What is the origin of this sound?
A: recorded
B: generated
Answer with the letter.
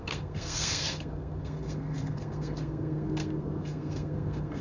B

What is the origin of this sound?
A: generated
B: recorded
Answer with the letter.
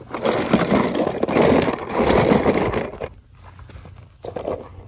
B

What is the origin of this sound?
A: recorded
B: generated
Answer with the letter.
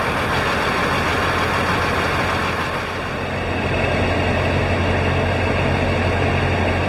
A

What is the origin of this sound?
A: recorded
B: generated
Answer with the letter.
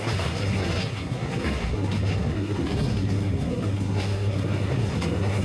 B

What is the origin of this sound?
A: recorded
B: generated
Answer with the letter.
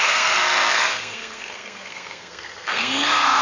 B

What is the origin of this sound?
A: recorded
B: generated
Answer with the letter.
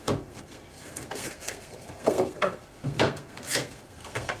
B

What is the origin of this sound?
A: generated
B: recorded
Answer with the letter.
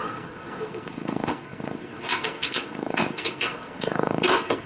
A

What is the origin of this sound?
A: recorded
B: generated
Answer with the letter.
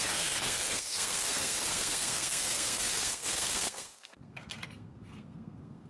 B